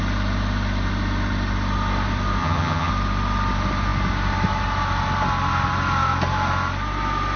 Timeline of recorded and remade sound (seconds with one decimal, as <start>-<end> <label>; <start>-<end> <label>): 0.0-2.4 recorded; 2.4-2.9 remade; 2.9-7.4 recorded